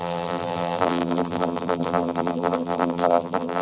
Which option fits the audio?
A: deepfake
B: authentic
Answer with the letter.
A